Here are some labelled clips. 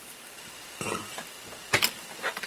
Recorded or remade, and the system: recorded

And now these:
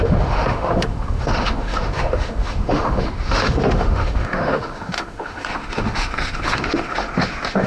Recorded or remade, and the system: remade, autoencoder, DAC-VAE